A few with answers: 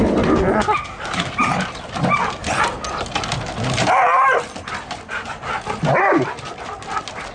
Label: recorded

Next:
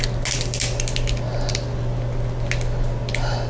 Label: recorded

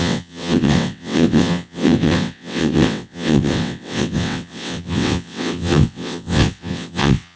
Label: remade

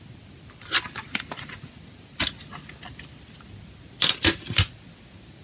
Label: recorded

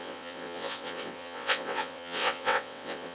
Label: remade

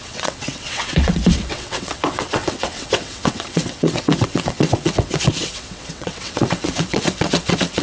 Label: remade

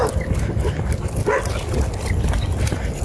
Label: recorded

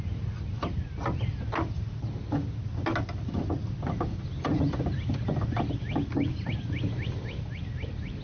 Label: recorded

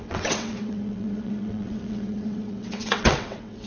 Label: remade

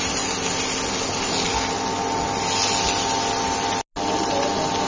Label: recorded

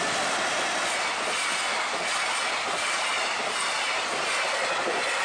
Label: recorded